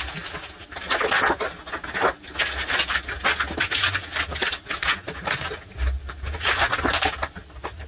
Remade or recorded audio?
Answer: recorded